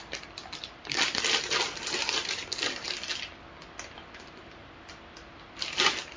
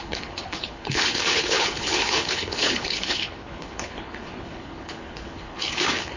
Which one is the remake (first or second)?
second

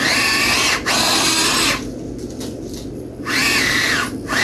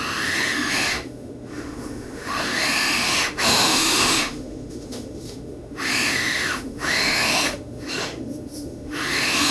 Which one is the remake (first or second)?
second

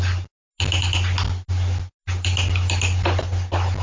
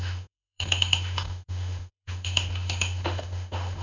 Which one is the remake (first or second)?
second